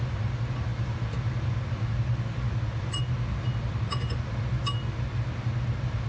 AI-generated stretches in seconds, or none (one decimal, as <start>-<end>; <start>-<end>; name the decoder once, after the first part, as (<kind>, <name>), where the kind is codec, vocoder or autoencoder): none

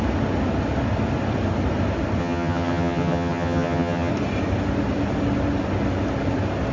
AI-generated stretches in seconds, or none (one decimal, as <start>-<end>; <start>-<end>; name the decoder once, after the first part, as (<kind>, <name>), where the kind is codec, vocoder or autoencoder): 2.2-4.1 (vocoder, HiFi-GAN)

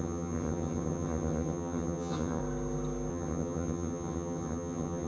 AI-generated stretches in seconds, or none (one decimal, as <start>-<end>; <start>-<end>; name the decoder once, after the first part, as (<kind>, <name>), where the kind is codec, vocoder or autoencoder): 0.0-2.4 (vocoder, HiFi-GAN); 3.1-5.1

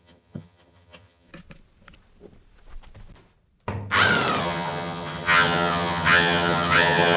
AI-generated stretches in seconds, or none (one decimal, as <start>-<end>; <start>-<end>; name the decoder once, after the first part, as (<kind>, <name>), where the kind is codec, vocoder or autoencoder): 0.0-1.3 (vocoder, HiFi-GAN); 4.4-7.2

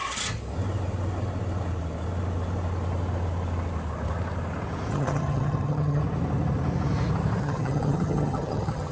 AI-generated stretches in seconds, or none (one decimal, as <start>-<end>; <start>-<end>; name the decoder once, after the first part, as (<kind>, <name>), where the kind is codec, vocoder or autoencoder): 4.9-6.0 (vocoder, HiFi-GAN); 7.4-8.9

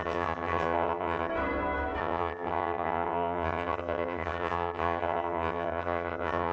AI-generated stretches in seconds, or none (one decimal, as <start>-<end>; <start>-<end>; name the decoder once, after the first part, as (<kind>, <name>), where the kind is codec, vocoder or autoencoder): 0.0-1.3 (vocoder, HiFi-GAN); 2.0-6.5

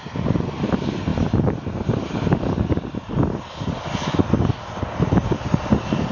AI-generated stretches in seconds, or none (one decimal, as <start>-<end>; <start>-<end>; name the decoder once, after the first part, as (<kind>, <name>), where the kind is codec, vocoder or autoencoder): none